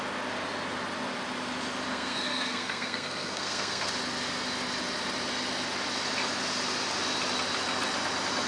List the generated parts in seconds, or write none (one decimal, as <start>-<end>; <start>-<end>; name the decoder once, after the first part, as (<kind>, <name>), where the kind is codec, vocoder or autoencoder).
1.9-3.9 (codec, SNAC)